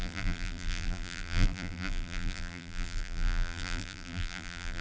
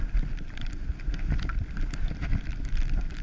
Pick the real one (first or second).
second